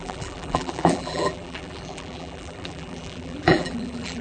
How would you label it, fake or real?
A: fake